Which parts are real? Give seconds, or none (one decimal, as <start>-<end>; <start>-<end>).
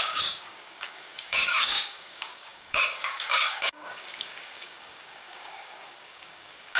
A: none